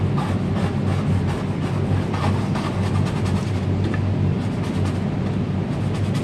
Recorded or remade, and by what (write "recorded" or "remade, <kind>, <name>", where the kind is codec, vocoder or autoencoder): recorded